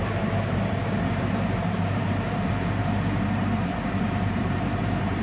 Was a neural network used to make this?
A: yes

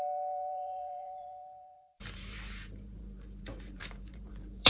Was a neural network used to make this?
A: yes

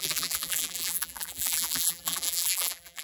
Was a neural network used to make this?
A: yes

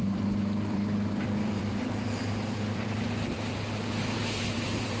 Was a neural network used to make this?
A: yes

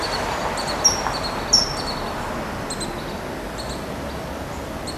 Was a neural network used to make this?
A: no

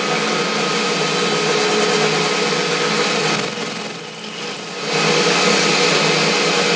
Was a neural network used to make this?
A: no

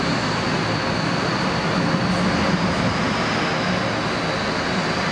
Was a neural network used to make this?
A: no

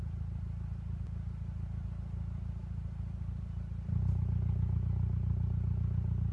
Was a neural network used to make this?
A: no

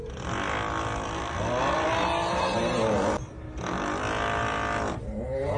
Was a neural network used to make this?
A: no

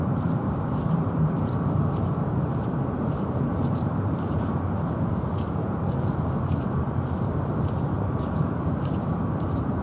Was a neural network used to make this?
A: yes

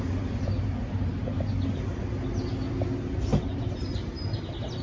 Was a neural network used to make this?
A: no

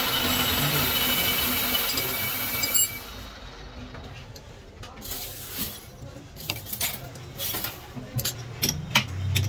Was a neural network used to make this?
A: no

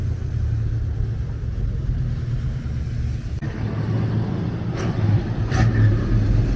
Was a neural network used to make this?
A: no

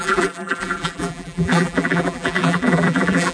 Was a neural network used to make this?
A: yes